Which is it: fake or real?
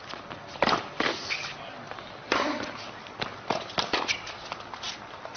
real